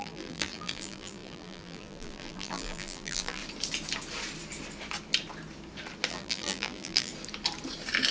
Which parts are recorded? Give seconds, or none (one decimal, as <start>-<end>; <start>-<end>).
3.4-6.1; 7.1-8.1